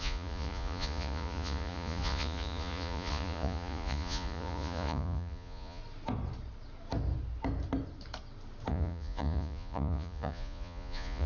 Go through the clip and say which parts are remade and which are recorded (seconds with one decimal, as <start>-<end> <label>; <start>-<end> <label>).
0.0-5.8 remade; 5.8-8.7 recorded; 8.7-11.3 remade